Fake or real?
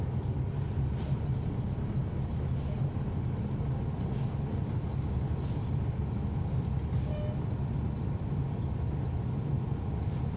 real